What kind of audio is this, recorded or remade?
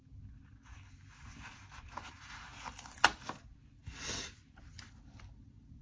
recorded